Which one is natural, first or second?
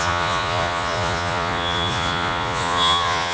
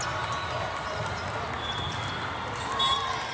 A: second